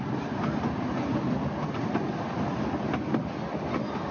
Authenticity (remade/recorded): recorded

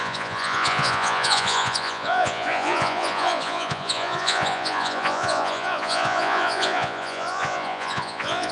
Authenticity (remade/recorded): remade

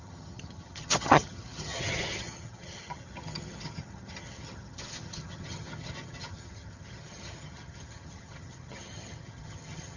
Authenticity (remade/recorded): remade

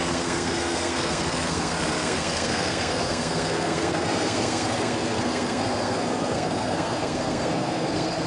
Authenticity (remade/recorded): remade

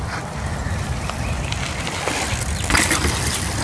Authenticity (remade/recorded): recorded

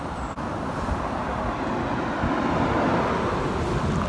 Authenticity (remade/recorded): recorded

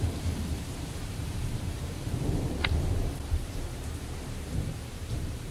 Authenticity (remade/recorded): remade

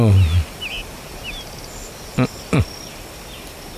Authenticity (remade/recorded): recorded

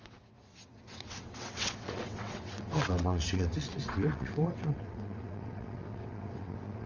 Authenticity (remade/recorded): remade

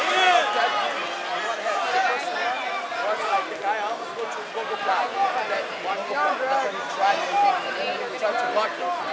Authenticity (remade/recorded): recorded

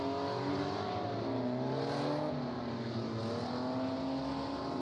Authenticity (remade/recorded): recorded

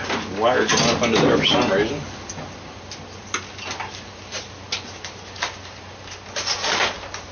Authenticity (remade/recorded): recorded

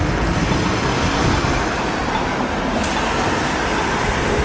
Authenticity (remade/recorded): recorded